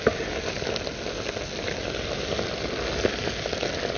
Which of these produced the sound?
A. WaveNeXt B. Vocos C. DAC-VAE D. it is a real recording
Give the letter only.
D